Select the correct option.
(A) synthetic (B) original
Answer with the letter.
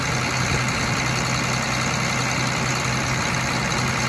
B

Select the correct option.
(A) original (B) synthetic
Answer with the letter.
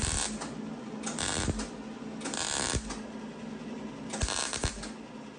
A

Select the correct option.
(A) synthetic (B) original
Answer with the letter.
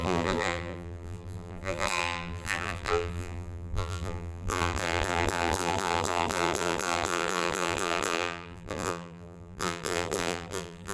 A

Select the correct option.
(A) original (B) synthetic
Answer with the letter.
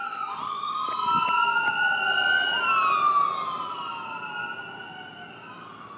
A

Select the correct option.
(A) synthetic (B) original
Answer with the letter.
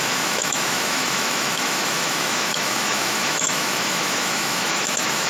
A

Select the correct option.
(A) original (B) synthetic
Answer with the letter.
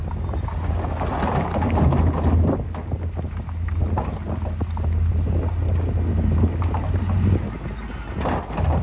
A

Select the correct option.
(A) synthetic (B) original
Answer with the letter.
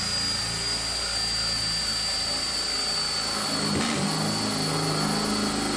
B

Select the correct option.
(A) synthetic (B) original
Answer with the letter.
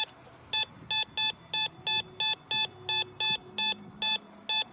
B